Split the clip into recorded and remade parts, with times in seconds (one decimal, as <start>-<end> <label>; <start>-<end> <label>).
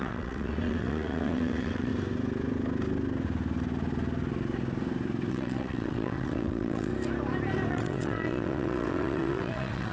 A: 0.0-1.9 remade; 1.9-5.3 recorded; 5.3-6.9 remade; 6.9-7.7 recorded; 7.7-9.9 remade